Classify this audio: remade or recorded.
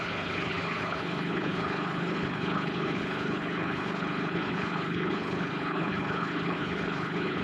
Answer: remade